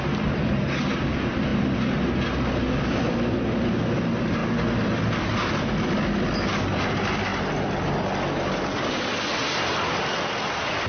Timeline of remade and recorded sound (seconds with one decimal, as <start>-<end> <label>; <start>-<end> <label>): 0.0-10.9 recorded